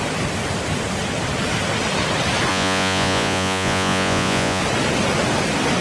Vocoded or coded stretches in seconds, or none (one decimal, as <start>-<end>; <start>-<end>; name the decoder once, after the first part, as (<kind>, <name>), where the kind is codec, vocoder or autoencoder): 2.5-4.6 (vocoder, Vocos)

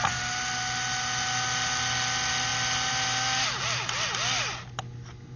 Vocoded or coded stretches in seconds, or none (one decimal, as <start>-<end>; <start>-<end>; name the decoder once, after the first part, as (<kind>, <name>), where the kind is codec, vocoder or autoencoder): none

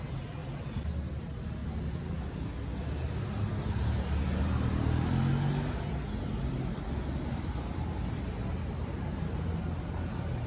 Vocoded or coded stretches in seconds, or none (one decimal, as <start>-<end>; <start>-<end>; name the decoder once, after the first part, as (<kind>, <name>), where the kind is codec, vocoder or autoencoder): none